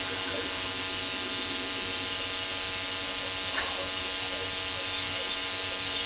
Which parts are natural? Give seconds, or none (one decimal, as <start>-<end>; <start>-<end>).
0.0-6.1